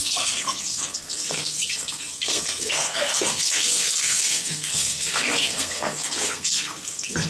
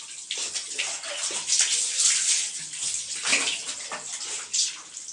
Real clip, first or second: second